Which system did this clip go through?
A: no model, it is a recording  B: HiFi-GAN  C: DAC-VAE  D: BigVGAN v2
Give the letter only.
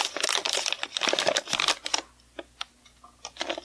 A